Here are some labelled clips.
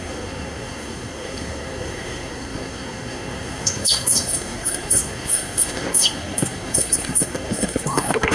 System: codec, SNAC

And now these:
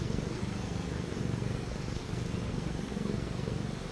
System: codec, SNAC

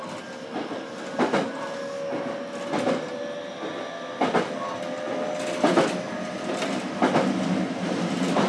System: none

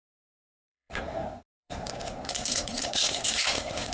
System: codec, SNAC